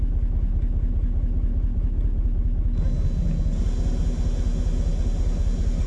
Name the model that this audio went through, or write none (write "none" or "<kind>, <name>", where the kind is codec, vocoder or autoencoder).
none